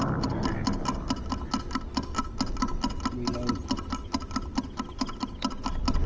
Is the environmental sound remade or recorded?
recorded